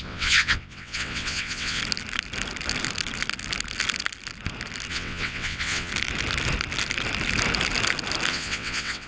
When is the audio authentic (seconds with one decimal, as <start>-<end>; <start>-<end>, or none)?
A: 1.8-4.9; 5.9-8.3